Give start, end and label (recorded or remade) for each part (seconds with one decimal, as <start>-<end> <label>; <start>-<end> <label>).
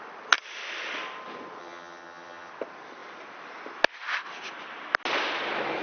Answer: 0.0-1.6 recorded; 1.6-2.5 remade; 2.5-5.8 recorded